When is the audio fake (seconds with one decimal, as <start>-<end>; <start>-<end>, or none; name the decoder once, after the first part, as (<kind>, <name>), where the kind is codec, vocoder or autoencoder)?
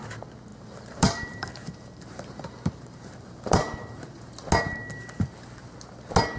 0.5-4.3 (vocoder, BigVGAN v2)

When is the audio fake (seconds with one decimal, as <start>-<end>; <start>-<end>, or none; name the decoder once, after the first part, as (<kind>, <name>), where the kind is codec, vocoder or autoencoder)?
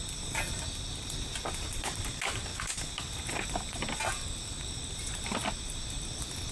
none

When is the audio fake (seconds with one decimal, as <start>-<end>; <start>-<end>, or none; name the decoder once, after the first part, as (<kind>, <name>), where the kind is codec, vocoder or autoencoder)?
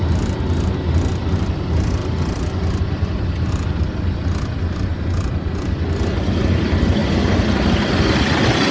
2.0-3.5 (vocoder, BigVGAN v2)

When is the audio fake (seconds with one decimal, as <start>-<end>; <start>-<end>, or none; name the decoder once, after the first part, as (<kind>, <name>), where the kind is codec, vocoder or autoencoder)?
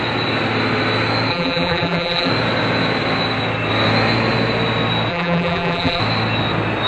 1.3-2.3 (vocoder, BigVGAN v2); 5.1-6.0